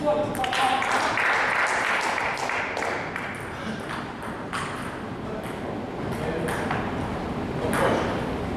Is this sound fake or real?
real